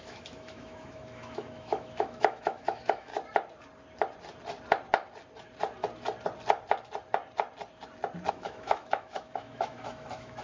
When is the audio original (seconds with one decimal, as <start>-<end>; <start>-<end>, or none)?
3.1-8.3